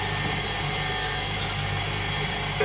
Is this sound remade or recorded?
recorded